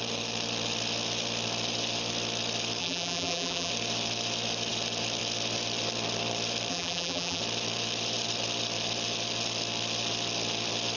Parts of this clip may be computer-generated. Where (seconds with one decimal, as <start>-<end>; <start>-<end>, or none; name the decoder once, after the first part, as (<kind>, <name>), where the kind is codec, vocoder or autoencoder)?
2.8-3.7 (vocoder, BigVGAN v2); 6.7-7.4